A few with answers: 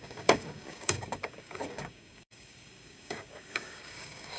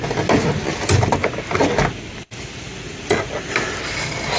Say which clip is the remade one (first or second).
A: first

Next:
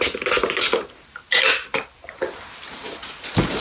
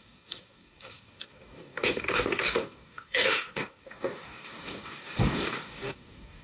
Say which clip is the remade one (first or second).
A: second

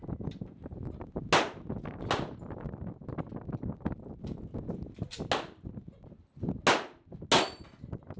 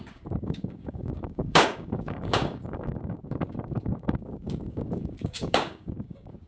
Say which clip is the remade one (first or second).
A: second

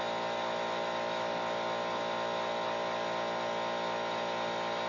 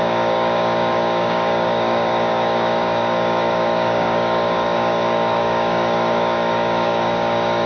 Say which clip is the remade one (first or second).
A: second